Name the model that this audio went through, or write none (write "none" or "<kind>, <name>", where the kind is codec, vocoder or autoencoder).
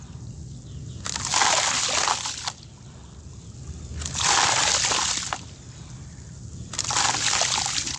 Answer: none